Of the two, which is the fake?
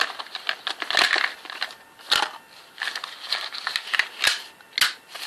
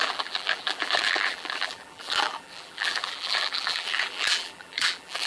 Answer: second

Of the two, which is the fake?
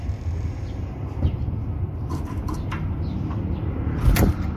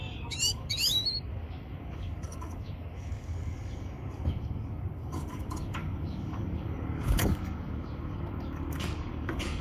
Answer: second